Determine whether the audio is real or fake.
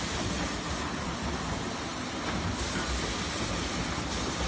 real